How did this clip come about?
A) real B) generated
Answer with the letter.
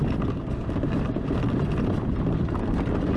A